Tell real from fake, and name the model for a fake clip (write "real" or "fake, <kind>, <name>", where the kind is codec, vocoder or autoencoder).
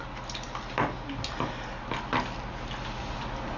real